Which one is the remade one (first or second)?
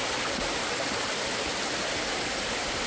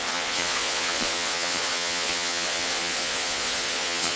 second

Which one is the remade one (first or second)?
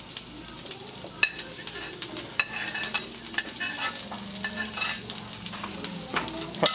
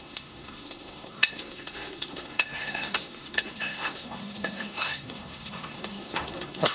second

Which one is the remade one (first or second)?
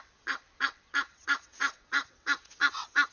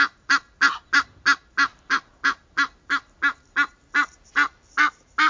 first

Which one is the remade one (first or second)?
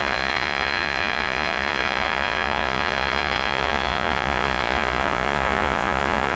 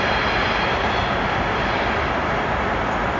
first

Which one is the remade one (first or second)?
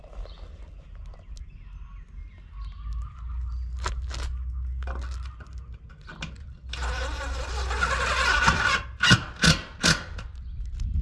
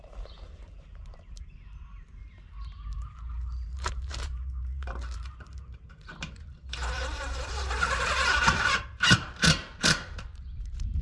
second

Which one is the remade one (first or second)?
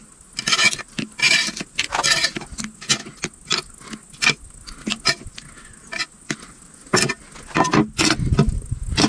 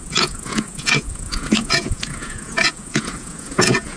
second